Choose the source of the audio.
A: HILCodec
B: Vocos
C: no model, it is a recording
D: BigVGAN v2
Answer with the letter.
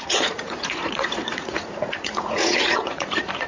B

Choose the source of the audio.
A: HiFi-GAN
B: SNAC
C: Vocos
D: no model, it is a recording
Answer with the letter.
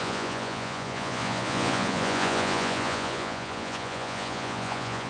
C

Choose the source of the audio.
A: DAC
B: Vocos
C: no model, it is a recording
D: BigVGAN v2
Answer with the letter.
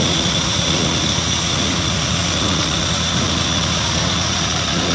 B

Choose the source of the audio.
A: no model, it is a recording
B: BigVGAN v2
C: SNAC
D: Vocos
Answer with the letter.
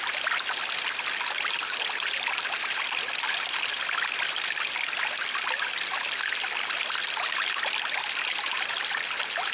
A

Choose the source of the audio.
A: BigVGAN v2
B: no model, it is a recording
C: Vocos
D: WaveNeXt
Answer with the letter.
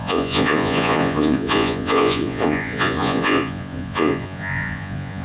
C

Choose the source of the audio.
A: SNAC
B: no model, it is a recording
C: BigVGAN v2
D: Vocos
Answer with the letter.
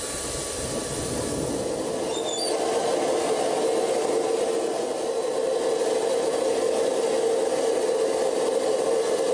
B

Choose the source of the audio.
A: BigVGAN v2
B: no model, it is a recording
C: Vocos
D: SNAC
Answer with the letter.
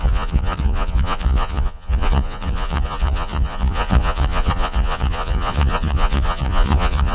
C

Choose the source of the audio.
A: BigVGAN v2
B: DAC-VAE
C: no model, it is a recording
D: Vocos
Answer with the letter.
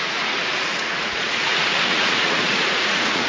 D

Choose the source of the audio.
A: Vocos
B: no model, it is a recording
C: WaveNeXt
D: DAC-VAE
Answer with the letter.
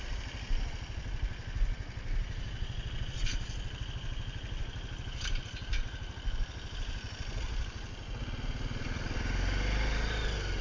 B